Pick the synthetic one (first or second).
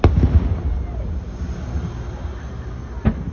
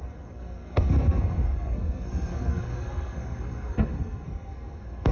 second